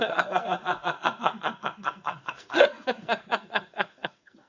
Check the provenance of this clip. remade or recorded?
remade